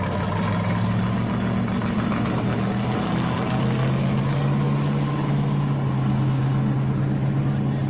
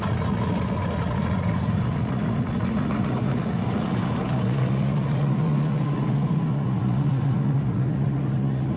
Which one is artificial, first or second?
second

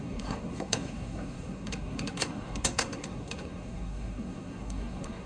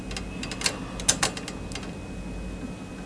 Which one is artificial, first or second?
first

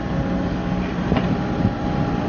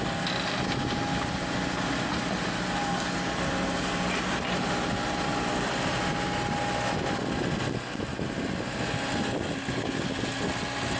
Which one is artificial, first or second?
first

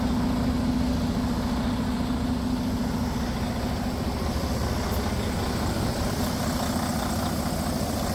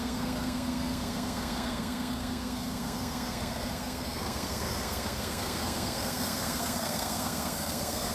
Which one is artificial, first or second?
second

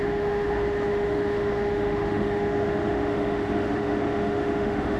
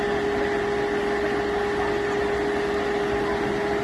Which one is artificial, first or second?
first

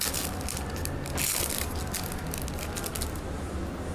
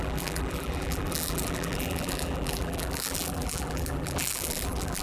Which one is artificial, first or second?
second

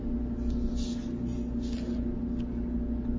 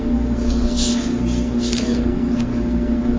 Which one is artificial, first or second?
second